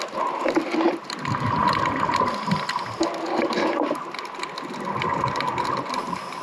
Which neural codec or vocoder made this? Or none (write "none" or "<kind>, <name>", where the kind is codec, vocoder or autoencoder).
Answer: none